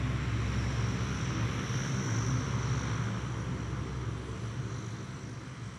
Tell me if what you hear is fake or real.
real